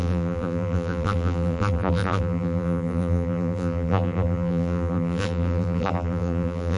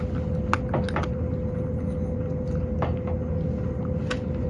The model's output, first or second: first